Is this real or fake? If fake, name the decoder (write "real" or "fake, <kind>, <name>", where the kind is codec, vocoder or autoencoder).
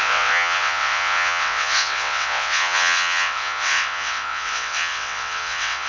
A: fake, vocoder, WaveNeXt